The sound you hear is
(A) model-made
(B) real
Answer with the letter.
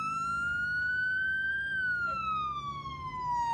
B